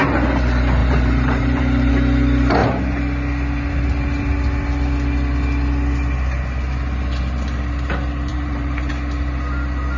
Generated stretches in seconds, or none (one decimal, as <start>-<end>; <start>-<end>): 0.8-1.9; 8.3-8.9